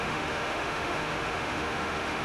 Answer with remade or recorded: remade